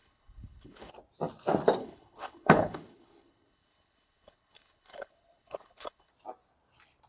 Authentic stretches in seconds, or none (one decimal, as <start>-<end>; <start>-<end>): 0.9-1.8; 6.1-7.1